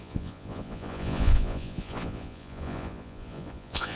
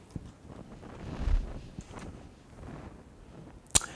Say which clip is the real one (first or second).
second